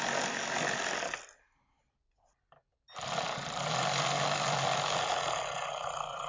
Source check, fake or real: real